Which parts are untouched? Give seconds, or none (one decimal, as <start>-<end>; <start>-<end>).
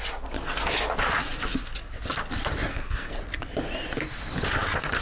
0.0-2.7; 3.2-5.0